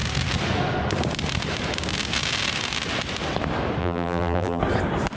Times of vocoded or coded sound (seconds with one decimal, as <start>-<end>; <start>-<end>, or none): 3.8-4.6